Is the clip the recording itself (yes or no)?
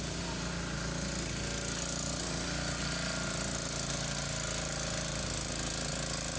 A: yes